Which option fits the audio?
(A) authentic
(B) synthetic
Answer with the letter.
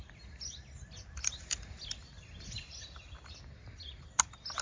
A